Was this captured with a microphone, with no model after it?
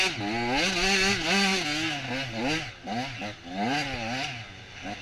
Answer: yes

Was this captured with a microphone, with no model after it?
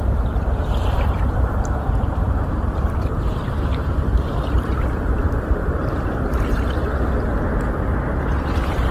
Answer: no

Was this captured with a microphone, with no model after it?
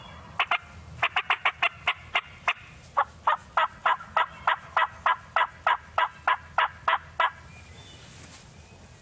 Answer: yes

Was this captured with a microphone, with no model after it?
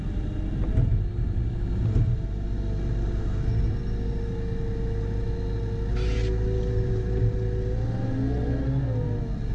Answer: yes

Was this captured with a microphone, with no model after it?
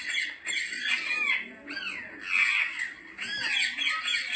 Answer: yes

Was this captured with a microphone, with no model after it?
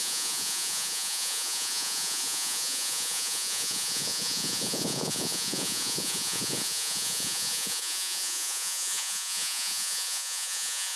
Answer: no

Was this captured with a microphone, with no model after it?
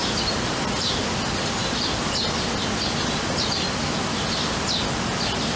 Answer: yes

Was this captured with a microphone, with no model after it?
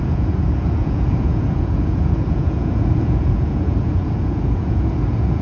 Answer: no